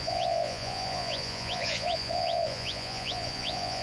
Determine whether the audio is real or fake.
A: fake